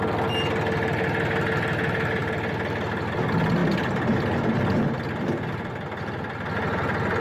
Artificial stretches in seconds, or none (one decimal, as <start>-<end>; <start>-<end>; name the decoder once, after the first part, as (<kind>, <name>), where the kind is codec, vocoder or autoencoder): none